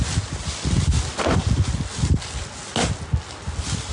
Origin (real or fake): real